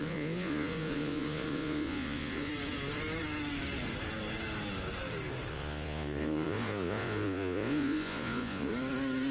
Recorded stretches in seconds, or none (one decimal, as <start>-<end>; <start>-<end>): 2.5-5.5; 8.7-9.3